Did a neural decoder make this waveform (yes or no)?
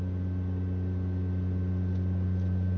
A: no